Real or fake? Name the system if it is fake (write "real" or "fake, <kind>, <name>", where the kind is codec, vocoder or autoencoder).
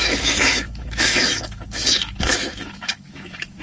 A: fake, autoencoder, DAC-VAE